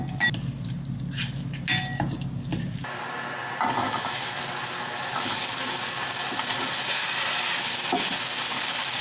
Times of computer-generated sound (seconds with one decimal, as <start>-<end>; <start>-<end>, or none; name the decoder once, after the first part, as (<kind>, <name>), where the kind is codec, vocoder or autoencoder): 3.8-6.2 (codec, DAC); 7.6-9.0